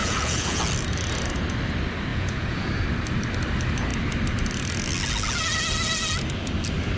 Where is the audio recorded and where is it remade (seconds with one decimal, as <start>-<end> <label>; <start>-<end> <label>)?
0.0-0.6 remade; 0.6-2.1 recorded; 2.1-2.7 remade; 2.7-7.0 recorded